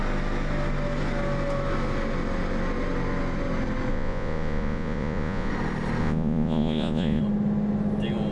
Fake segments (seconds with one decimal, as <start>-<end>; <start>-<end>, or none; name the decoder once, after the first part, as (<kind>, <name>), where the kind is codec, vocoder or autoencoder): 3.9-5.5 (vocoder, Vocos); 6.0-7.2